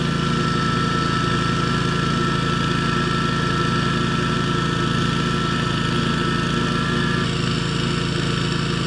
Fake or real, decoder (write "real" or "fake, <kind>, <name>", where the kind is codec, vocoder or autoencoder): real